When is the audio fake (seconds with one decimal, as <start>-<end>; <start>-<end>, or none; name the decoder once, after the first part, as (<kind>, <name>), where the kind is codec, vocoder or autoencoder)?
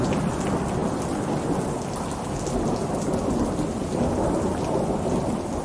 none